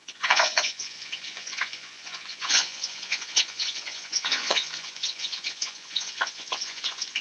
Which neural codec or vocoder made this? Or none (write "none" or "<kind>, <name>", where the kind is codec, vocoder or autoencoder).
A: vocoder, Vocos